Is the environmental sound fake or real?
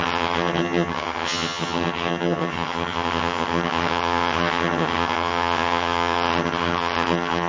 fake